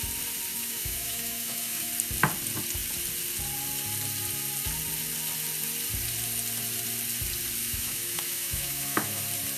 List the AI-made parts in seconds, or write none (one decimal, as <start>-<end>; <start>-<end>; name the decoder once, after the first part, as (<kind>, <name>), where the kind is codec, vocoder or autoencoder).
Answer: 0.5-1.9 (autoencoder, DAC-VAE); 7.6-9.2